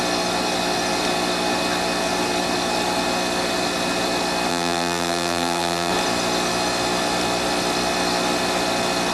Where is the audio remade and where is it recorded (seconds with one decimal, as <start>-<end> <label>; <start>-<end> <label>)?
0.0-4.5 recorded; 4.5-5.9 remade; 5.9-9.1 recorded